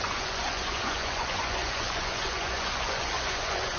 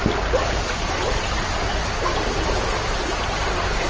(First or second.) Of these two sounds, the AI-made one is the first